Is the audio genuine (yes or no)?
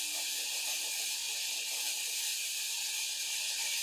yes